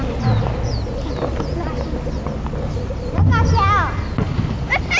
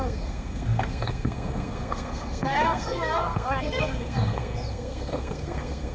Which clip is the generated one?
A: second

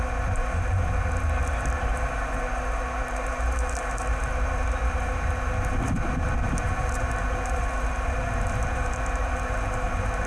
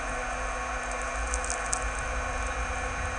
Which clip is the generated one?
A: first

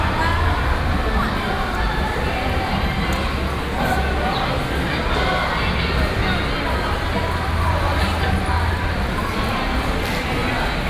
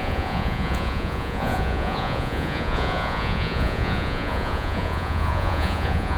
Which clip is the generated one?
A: second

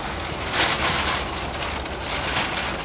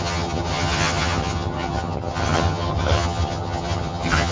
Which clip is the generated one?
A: second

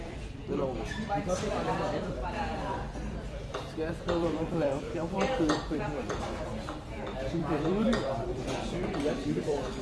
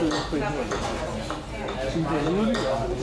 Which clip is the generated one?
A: first